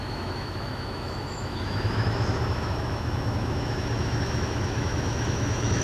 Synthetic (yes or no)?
yes